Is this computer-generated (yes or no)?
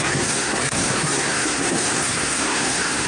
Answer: yes